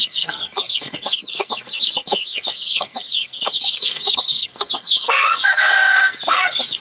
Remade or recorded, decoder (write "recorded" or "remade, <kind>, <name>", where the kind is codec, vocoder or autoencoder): remade, codec, SNAC